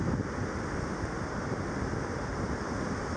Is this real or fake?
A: real